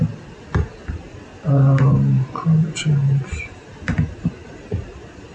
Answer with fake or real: real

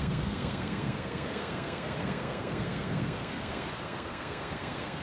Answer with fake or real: fake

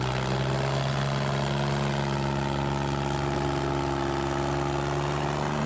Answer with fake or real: real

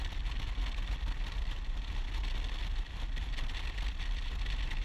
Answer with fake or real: real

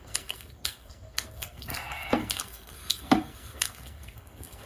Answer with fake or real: fake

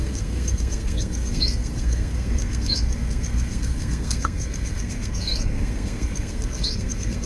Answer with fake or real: fake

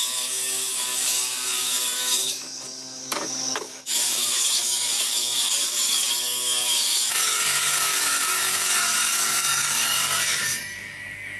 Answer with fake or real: fake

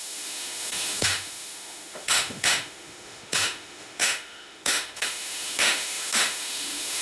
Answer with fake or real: fake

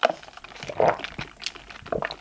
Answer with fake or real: real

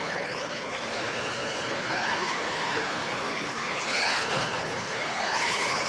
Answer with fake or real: fake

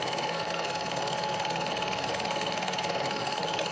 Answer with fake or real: fake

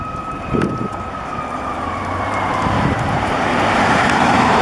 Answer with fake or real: fake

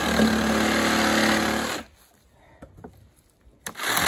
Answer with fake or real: real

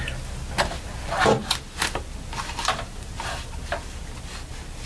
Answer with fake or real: real